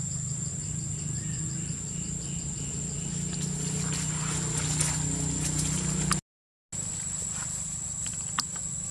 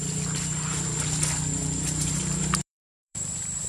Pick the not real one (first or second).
second